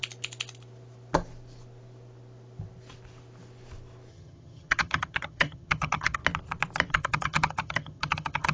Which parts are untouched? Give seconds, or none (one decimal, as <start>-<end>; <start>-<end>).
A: 0.0-4.1; 6.2-6.9